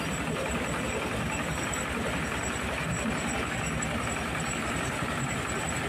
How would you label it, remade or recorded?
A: recorded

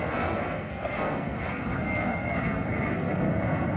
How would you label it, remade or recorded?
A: remade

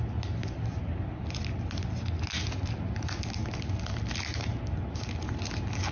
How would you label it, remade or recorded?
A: recorded